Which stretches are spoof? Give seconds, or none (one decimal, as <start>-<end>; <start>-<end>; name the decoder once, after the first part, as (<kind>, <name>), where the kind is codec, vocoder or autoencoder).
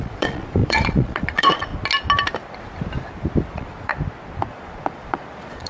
0.0-1.7 (vocoder, Vocos); 3.5-3.9; 4.5-5.7